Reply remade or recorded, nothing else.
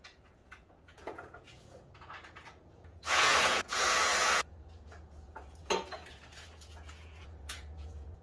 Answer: remade